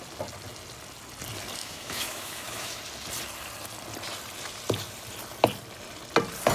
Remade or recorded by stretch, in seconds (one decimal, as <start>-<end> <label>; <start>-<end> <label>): 0.0-1.6 recorded; 1.6-2.8 remade; 2.8-6.5 recorded